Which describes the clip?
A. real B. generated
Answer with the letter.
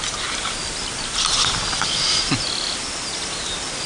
A